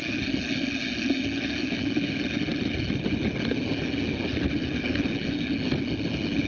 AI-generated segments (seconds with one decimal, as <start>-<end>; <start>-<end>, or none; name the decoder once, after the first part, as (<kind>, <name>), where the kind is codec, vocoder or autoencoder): none